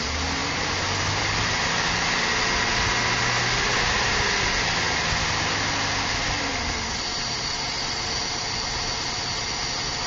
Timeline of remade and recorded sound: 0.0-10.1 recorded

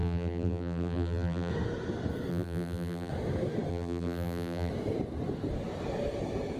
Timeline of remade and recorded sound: 0.0-1.5 remade; 1.5-2.3 recorded; 2.3-3.1 remade; 3.1-3.7 recorded; 3.7-4.7 remade; 4.7-6.6 recorded

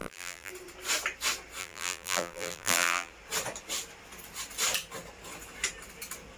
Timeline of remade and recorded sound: 0.0-0.5 remade; 0.5-1.6 recorded; 1.6-3.1 remade; 3.1-6.4 recorded

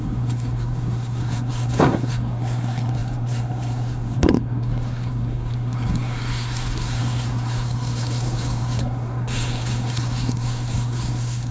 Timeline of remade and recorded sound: 0.0-11.5 remade

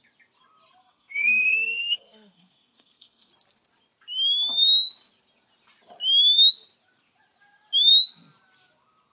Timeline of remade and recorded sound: 0.0-0.8 recorded; 0.8-3.3 remade; 3.3-9.1 recorded

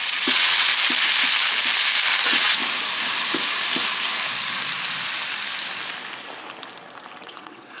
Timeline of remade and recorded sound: 0.0-0.7 remade; 0.7-2.2 recorded; 2.2-2.6 remade; 2.6-7.2 recorded; 7.2-7.8 remade